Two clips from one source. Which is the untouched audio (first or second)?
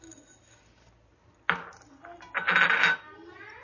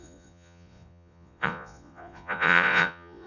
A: first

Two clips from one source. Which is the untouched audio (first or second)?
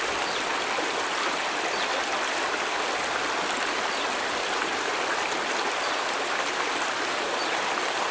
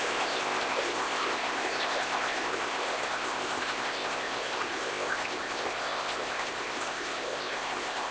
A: first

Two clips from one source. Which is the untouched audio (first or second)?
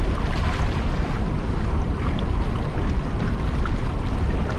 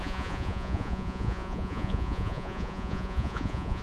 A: first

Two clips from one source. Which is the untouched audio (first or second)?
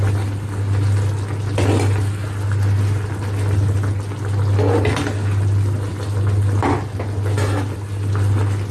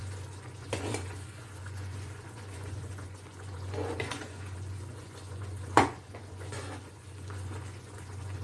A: first